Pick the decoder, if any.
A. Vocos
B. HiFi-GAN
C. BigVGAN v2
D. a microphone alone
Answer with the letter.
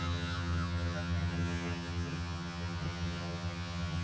B